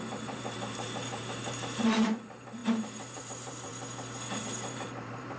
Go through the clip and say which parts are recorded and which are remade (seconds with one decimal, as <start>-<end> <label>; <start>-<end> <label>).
0.0-3.7 remade; 3.7-4.4 recorded; 4.4-5.4 remade